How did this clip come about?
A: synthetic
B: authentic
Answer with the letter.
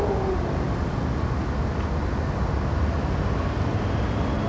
B